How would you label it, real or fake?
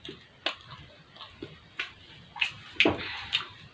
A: real